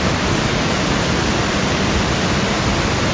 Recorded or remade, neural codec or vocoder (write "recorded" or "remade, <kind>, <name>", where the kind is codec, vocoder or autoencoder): recorded